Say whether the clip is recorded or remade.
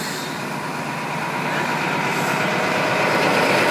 recorded